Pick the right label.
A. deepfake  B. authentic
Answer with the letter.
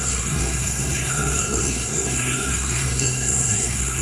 A